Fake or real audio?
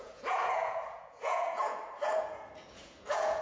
fake